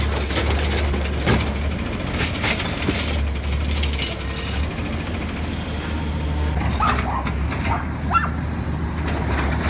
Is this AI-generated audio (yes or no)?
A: no